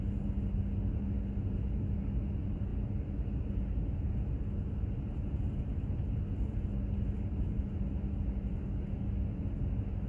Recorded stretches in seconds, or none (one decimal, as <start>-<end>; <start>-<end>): 0.0-10.1